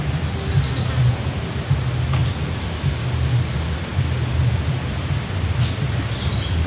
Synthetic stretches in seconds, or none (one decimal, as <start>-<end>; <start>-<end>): none